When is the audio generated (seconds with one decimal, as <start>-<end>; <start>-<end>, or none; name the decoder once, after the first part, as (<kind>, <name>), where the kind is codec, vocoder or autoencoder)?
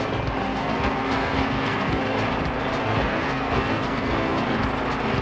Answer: 0.5-2.0 (codec, SNAC); 2.8-4.4